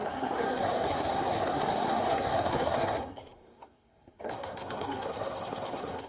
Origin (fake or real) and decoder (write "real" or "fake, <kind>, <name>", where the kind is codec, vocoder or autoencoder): fake, codec, SNAC